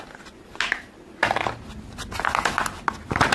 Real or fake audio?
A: real